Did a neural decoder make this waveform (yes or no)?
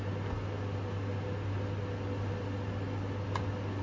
no